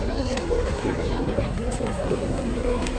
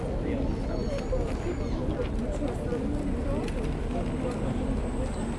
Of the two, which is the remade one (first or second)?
first